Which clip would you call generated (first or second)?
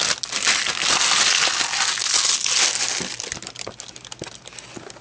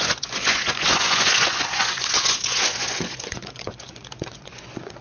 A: second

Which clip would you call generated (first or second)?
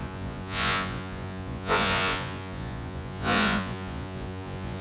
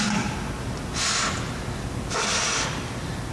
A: first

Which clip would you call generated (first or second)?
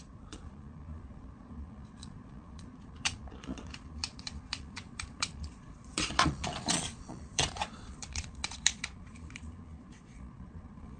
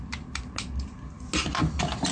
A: first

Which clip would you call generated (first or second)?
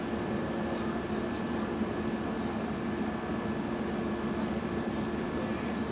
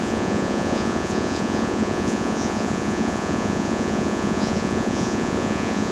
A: second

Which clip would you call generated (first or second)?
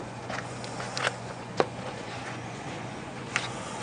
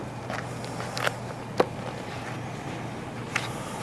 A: first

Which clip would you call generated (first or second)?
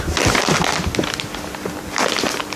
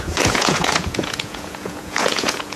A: second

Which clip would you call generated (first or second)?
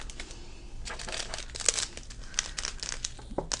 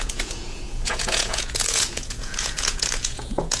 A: second